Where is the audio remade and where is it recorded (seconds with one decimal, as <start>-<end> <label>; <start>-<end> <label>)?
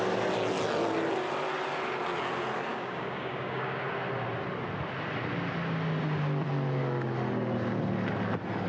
0.0-2.7 recorded; 2.7-3.8 remade; 3.8-8.7 recorded